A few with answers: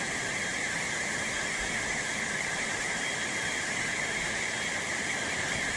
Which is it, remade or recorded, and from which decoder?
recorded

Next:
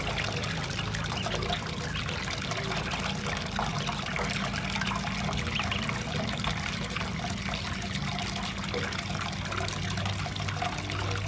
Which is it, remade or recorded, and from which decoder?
recorded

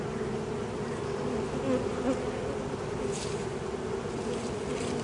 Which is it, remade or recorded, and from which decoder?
recorded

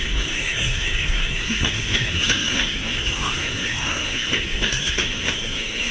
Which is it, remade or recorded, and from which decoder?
remade, codec, SNAC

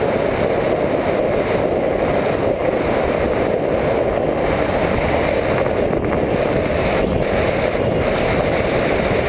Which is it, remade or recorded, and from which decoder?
recorded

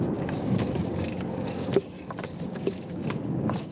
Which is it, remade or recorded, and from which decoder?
remade, codec, DAC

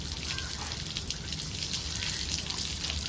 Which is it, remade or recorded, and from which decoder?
recorded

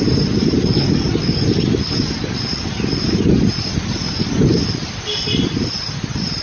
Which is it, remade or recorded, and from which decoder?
recorded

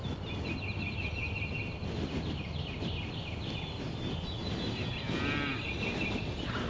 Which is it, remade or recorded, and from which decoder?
recorded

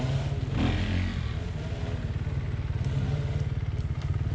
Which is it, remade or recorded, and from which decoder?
recorded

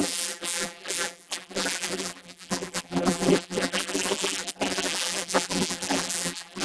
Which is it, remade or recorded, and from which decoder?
remade, vocoder, BigVGAN v2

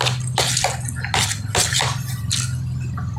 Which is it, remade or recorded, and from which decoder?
recorded